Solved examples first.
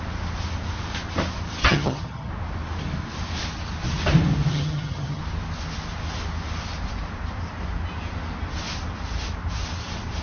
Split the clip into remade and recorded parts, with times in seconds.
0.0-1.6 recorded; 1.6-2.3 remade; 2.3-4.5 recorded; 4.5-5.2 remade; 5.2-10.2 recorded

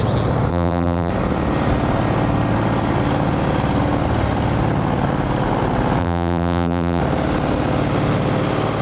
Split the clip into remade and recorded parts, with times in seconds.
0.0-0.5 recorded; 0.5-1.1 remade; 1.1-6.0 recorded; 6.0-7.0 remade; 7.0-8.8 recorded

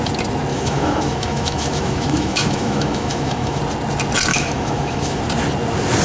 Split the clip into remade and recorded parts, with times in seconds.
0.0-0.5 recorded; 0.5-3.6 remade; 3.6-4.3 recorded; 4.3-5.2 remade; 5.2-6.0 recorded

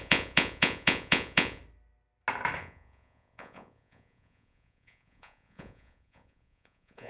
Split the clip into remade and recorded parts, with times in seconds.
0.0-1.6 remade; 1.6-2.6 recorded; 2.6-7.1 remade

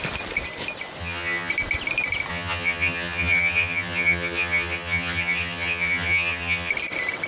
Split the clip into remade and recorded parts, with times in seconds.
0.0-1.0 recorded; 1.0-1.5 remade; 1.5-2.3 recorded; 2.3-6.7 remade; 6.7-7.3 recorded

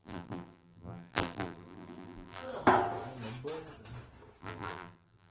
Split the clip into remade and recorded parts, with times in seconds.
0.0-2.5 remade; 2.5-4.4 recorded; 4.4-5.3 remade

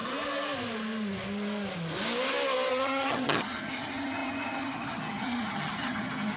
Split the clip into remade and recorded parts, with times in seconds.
0.0-2.7 recorded; 2.7-6.4 remade